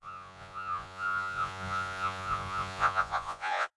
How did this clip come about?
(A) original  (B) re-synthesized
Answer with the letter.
B